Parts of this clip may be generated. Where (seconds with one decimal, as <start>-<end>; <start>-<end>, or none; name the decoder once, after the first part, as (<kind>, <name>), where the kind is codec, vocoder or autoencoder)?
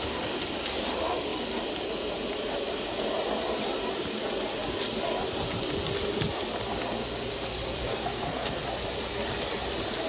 7.8-8.6 (codec, SNAC)